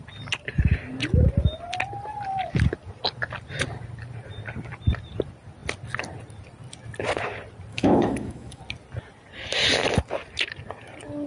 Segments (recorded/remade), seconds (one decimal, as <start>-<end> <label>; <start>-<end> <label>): 0.0-7.7 recorded; 7.7-8.6 remade; 8.6-11.3 recorded